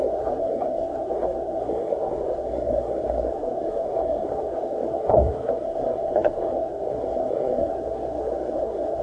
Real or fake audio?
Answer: fake